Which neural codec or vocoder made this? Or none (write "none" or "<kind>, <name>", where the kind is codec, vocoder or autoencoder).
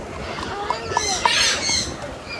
none